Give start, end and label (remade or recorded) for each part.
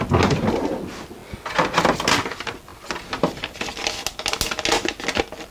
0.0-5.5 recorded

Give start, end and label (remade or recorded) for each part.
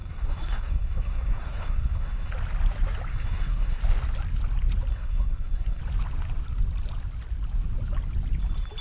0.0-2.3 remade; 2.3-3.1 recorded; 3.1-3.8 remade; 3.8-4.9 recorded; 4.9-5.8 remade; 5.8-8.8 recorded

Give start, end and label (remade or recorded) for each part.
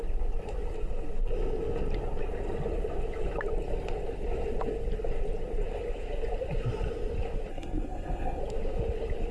0.0-7.5 recorded; 7.5-8.4 remade; 8.4-9.3 recorded